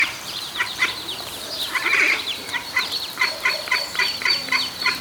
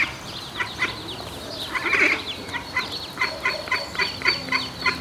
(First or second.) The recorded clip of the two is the second